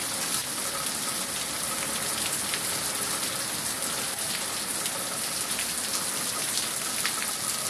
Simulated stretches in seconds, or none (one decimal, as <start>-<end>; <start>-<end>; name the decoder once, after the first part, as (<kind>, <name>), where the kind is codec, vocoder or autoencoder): none